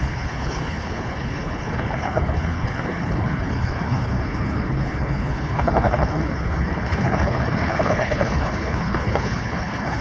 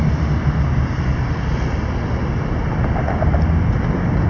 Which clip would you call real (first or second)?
second